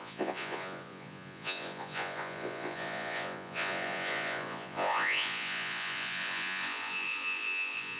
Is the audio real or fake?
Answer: fake